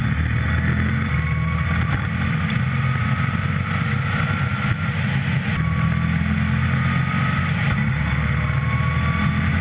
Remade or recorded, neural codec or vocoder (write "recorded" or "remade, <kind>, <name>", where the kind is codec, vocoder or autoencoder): recorded